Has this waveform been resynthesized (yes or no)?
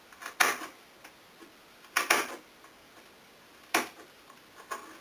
no